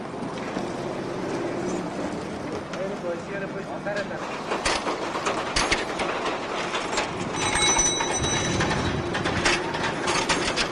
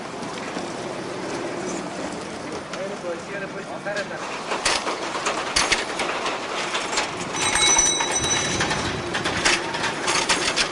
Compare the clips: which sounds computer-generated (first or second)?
second